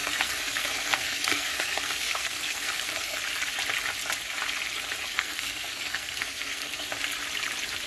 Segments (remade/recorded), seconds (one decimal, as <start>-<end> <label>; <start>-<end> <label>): 0.0-3.2 remade; 3.2-5.1 recorded; 5.1-6.9 remade; 6.9-7.9 recorded